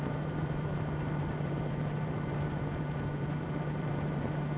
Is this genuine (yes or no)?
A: no